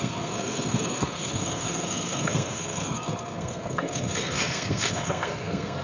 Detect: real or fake fake